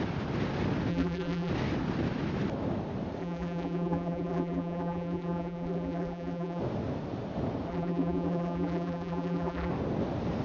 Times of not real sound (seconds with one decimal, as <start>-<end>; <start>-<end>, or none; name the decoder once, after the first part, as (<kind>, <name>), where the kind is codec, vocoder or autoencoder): 0.9-1.5 (vocoder, BigVGAN v2); 3.2-6.6; 7.7-9.7